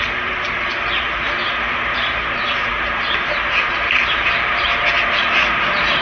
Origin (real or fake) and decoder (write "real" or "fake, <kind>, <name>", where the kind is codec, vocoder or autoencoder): fake, vocoder, BigVGAN v2